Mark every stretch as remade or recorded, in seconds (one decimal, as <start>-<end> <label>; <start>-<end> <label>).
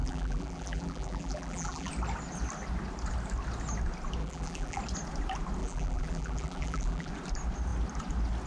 0.0-1.9 remade; 1.9-4.2 recorded; 4.2-4.8 remade; 4.8-5.6 recorded; 5.6-7.1 remade; 7.1-8.5 recorded